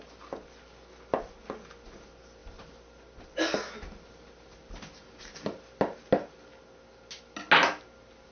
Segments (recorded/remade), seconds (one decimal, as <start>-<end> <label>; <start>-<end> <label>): 0.0-8.3 recorded